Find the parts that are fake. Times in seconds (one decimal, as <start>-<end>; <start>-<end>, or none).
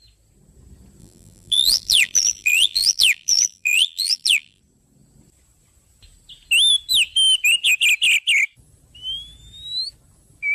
1.0-4.6